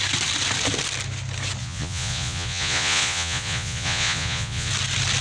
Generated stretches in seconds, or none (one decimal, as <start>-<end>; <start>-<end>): 1.6-4.7